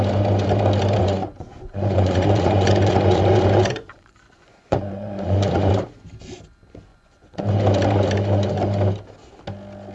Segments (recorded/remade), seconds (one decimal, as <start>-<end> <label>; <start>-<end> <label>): 0.0-1.0 recorded; 1.0-5.7 remade; 5.7-6.9 recorded; 6.9-7.4 remade; 7.4-9.9 recorded